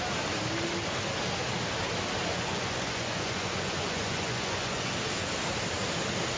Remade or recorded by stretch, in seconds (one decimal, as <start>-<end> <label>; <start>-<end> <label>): 0.0-2.3 recorded; 2.3-4.9 remade; 4.9-6.4 recorded